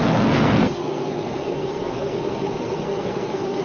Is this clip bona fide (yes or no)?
no